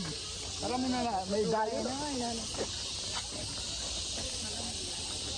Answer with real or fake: real